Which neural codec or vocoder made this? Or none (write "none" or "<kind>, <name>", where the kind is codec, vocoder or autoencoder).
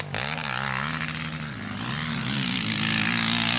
none